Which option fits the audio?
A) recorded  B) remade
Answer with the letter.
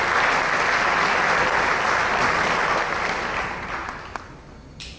A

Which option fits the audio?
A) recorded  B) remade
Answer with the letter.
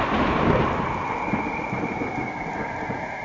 A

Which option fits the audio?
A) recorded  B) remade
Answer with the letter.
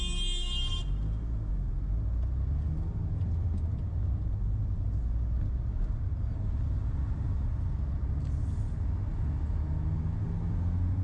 A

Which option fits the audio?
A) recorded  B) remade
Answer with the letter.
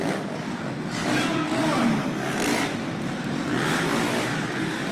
A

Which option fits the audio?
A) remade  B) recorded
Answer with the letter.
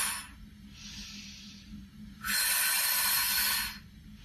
B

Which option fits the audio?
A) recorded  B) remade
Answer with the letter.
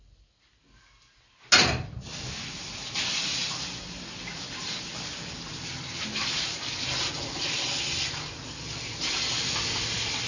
A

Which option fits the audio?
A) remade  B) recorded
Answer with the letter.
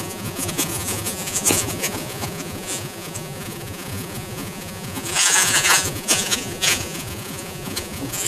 A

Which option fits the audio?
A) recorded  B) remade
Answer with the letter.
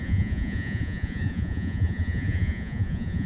B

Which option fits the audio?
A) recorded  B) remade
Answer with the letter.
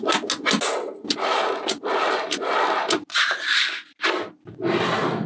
A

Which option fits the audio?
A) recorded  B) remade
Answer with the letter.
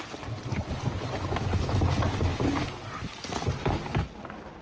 A